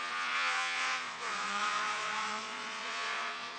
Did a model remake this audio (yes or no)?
yes